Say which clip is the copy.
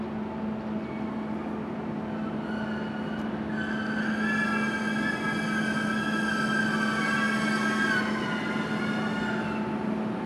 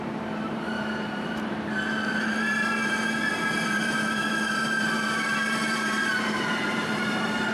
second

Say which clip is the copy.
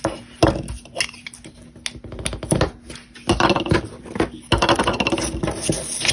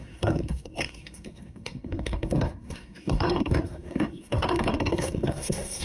second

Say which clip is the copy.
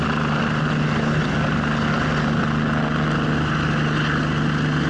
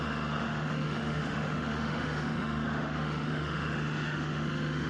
second